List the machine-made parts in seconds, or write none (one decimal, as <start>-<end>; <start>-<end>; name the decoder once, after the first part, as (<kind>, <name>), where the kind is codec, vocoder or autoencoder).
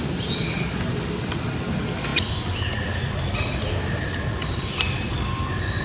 none